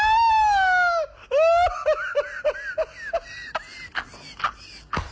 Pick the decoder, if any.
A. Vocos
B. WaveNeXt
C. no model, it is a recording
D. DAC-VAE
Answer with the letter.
C